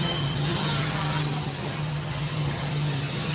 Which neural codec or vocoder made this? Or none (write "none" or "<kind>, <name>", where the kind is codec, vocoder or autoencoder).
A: vocoder, HiFi-GAN